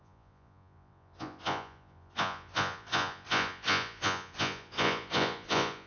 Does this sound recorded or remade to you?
remade